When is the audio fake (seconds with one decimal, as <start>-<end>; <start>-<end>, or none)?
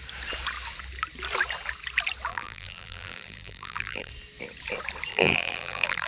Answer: 2.3-4.1; 5.1-6.1